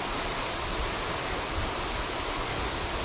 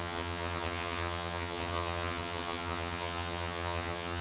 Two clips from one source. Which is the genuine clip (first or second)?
first